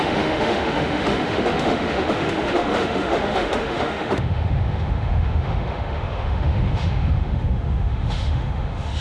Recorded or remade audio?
remade